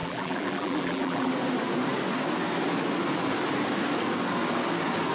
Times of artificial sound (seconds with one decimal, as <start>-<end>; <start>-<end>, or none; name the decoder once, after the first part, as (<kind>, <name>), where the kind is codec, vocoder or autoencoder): 0.0-1.3 (vocoder, BigVGAN v2)